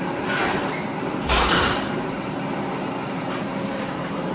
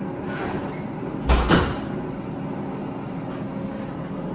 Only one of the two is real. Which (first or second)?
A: second